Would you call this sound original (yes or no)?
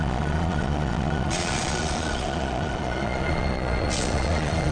no